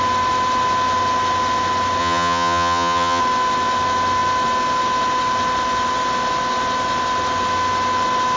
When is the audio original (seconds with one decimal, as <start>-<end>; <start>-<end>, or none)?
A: 0.0-2.0; 3.2-8.4